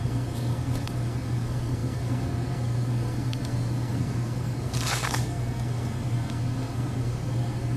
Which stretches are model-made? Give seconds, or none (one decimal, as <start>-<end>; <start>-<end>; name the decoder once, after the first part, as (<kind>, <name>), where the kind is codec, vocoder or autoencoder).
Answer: 0.0-7.8 (codec, SNAC)